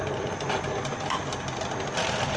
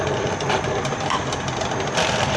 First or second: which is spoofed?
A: second